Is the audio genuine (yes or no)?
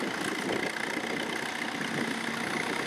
yes